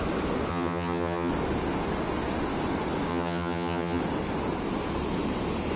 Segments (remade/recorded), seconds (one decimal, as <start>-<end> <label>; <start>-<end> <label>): 0.0-0.5 recorded; 0.5-1.3 remade; 1.3-3.1 recorded; 3.1-4.0 remade; 4.0-5.8 recorded